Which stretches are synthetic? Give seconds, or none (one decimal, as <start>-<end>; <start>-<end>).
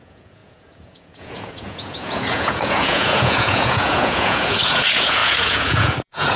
0.0-6.4